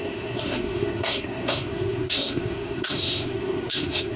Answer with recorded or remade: remade